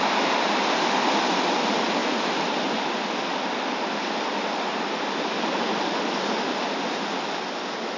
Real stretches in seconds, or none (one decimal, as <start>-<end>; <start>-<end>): 0.0-8.0